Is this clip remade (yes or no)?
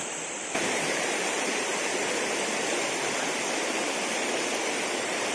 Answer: yes